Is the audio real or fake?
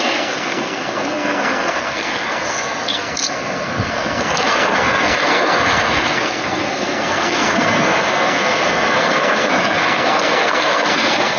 fake